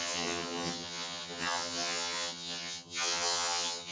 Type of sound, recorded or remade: remade